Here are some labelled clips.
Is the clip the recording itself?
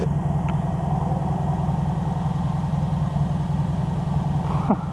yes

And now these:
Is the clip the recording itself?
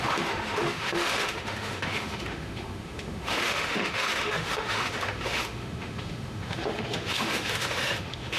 no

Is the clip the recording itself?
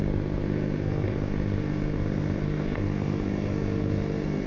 no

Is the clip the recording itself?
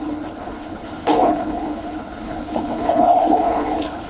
no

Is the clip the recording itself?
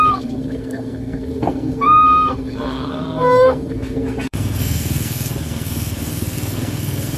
no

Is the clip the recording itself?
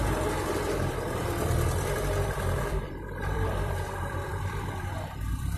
no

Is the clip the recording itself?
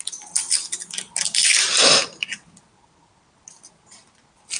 yes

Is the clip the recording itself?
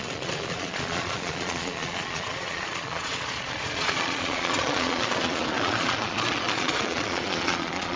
no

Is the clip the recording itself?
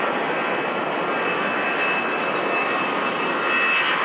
yes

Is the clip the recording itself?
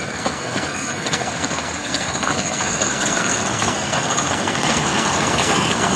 no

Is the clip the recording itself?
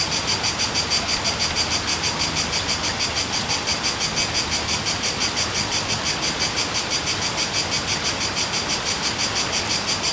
yes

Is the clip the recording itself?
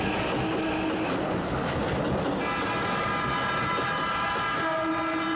yes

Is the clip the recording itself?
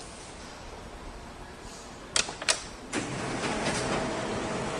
yes